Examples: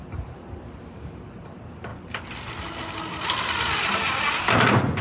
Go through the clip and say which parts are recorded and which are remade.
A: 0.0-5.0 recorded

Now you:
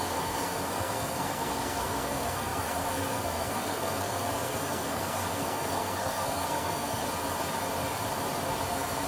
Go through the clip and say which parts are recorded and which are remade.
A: 0.0-7.0 remade; 7.0-8.7 recorded; 8.7-9.1 remade

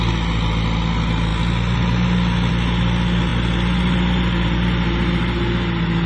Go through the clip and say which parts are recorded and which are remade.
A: 0.0-6.1 recorded

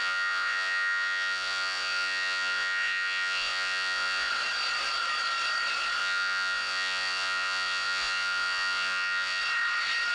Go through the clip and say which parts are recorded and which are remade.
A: 0.0-4.3 remade; 4.3-6.0 recorded; 6.0-9.4 remade; 9.4-10.1 recorded

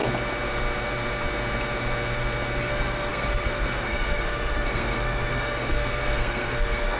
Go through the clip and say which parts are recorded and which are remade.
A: 0.0-2.6 recorded; 2.6-7.0 remade

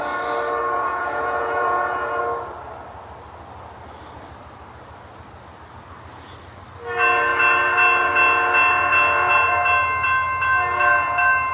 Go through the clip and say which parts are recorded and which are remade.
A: 0.0-0.6 recorded; 0.6-2.2 remade; 2.2-11.5 recorded

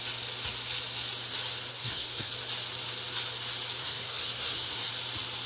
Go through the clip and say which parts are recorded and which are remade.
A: 0.0-1.7 recorded; 1.7-2.3 remade; 2.3-3.8 recorded; 3.8-4.9 remade; 4.9-5.5 recorded